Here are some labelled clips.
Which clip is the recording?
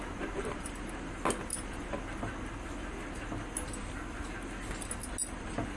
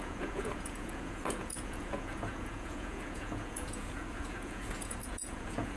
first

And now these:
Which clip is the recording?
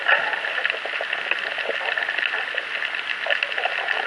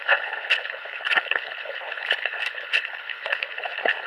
first